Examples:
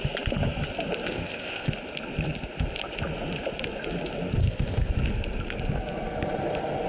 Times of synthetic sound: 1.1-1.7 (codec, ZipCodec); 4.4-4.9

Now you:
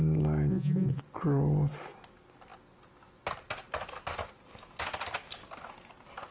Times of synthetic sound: 0.5-1.0 (vocoder, Vocos)